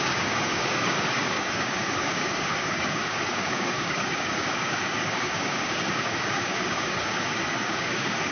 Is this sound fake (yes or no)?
yes